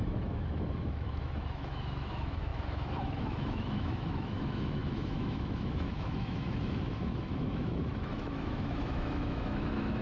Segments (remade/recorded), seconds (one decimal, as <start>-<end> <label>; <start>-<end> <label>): 0.0-10.0 remade